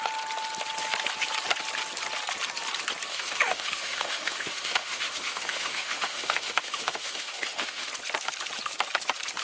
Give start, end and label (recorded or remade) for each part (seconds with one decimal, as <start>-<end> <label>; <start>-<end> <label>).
0.0-3.1 recorded; 3.1-7.9 remade; 7.9-9.4 recorded